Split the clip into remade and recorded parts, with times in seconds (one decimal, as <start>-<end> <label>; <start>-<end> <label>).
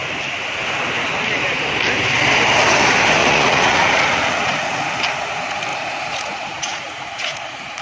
0.0-3.2 recorded; 3.2-4.9 remade; 4.9-5.7 recorded; 5.7-7.8 remade